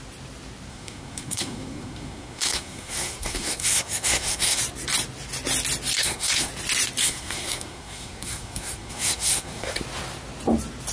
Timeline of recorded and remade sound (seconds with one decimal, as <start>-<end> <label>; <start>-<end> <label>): 0.0-0.7 recorded; 0.7-4.6 remade; 4.6-6.0 recorded; 6.0-6.5 remade; 6.5-7.0 recorded; 7.0-9.8 remade; 9.8-10.9 recorded